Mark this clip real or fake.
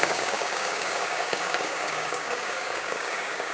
fake